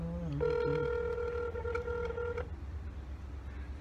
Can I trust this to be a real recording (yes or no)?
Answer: yes